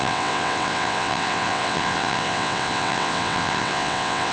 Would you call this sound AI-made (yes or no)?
yes